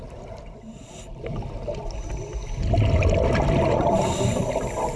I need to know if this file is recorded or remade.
recorded